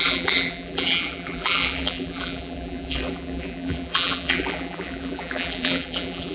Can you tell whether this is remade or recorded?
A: remade